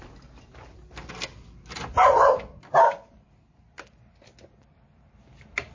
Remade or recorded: recorded